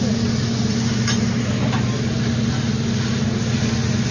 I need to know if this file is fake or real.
real